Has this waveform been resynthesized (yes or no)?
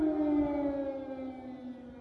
no